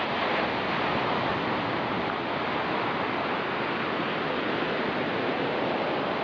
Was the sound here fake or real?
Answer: real